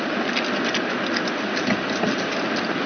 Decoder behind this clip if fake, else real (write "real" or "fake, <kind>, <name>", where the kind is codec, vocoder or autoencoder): real